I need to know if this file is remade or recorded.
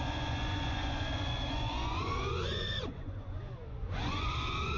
remade